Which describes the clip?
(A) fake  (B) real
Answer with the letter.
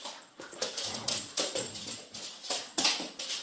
A